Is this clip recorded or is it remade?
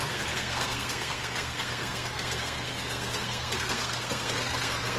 remade